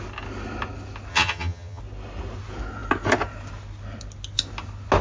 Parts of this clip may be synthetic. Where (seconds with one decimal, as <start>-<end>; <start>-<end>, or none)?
1.1-1.8

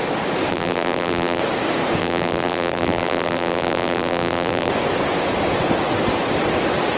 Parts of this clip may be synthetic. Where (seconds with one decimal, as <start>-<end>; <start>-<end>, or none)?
0.5-1.4; 2.0-4.7